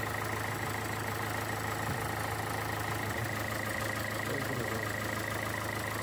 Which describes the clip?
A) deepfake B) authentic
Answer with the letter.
B